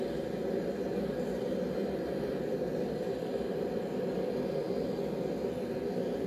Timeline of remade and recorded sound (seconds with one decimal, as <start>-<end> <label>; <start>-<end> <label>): 0.0-1.8 recorded; 1.8-3.3 remade; 3.3-6.3 recorded